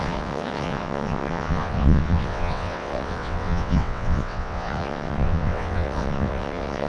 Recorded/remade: remade